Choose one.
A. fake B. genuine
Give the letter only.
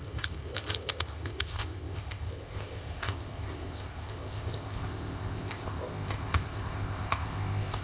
A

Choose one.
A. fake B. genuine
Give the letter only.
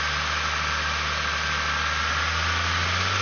B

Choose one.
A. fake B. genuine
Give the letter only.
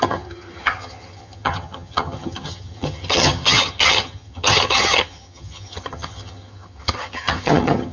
A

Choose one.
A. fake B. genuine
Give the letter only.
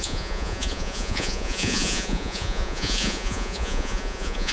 A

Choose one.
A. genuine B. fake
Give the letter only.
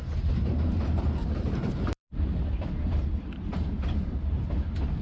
B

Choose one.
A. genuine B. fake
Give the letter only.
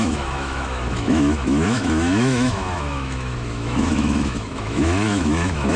B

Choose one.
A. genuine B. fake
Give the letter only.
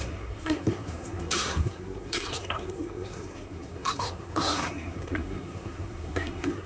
B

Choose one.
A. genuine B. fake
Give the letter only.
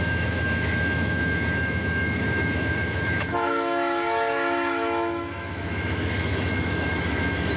B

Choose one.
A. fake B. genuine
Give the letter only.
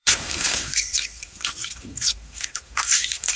A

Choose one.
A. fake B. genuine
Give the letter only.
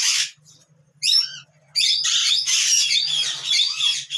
B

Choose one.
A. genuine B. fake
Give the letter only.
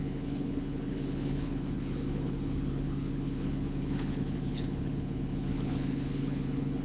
B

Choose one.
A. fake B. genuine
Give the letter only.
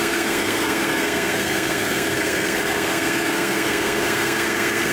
A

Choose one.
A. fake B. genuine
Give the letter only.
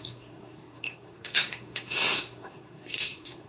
A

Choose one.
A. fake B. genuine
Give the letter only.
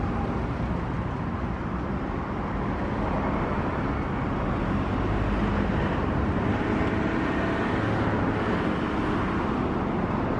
B